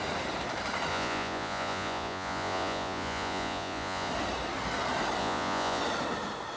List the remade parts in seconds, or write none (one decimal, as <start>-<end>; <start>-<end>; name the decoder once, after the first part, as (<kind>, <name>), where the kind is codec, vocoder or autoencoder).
0.9-4.1 (vocoder, Vocos); 5.2-5.8